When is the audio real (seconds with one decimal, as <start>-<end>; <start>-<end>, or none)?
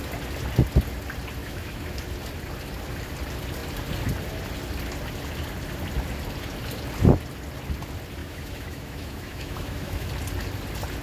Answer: 0.0-1.4; 2.0-8.2; 10.1-11.0